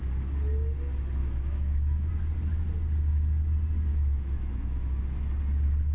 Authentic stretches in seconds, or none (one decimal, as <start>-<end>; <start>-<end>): 0.0-1.2; 2.1-3.9; 5.0-5.9